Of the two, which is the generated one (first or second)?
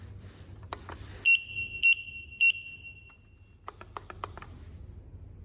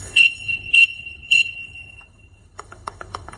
second